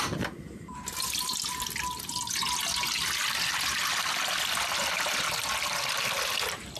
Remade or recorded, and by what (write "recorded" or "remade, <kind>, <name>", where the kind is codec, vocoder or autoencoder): recorded